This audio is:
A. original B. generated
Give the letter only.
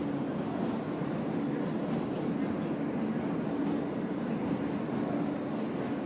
A